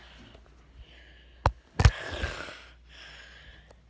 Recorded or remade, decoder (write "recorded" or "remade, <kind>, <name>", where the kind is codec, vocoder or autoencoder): recorded